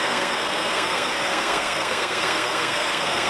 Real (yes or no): no